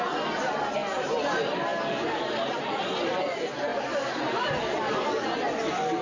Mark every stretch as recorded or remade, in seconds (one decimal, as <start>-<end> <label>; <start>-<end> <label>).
0.0-6.0 recorded